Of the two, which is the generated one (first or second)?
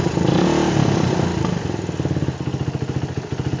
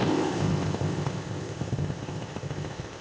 second